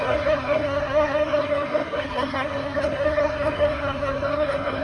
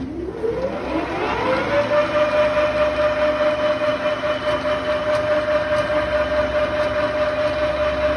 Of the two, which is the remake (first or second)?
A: first